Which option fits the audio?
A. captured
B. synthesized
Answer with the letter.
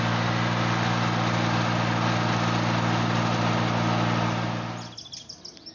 A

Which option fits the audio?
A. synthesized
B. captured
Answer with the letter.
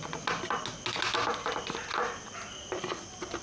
B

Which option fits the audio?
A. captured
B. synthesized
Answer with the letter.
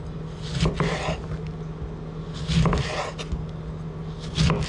A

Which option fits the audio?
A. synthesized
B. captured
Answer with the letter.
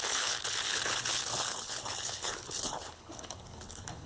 A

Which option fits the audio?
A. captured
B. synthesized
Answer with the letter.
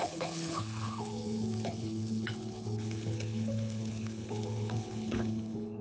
B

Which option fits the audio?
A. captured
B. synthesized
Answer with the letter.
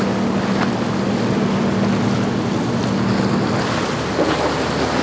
A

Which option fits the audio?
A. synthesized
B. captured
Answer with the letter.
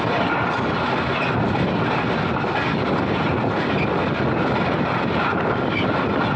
B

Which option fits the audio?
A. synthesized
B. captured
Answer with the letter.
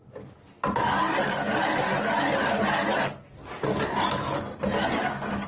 B